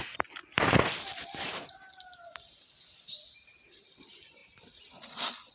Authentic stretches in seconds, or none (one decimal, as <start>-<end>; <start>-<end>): 0.0-5.5